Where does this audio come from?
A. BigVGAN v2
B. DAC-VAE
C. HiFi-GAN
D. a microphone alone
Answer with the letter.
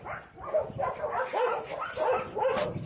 D